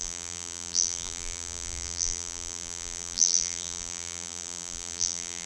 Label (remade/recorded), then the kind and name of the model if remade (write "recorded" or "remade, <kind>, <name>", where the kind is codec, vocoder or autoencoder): remade, vocoder, BigVGAN v2